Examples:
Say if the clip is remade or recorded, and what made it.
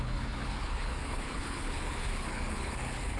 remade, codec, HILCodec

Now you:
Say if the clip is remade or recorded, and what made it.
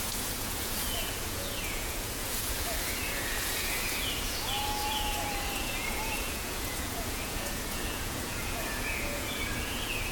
remade, vocoder, Vocos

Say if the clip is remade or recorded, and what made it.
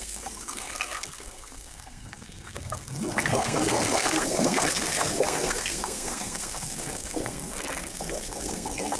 remade, codec, SNAC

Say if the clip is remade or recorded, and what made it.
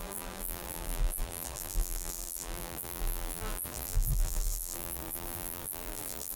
remade, vocoder, BigVGAN v2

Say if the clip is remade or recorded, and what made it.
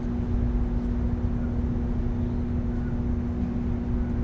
recorded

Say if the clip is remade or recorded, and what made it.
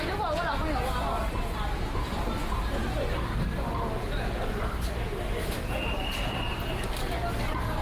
recorded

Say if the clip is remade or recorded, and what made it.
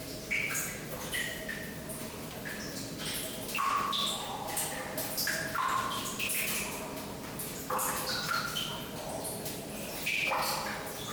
recorded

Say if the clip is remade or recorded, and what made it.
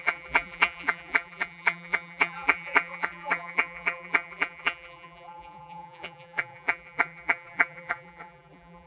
remade, vocoder, BigVGAN v2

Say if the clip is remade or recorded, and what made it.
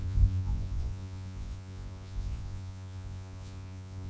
remade, vocoder, Vocos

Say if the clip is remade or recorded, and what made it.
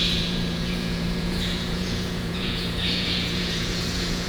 remade, vocoder, Vocos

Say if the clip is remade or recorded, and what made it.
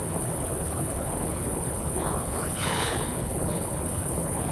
remade, codec, HILCodec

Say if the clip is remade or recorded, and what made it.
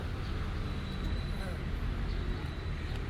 recorded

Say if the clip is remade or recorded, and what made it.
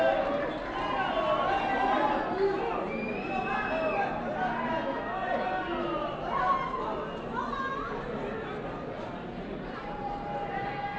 recorded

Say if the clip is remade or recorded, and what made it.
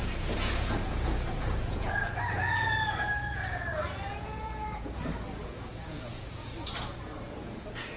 remade, vocoder, Vocos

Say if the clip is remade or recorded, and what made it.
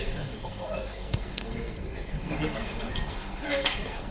remade, codec, SNAC